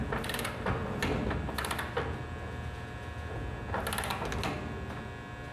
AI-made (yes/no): no